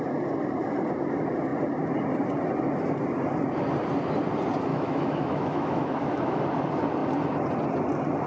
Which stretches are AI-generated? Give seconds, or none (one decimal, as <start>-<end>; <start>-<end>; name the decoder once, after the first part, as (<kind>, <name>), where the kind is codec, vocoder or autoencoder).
4.7-6.4 (autoencoder, DAC-VAE)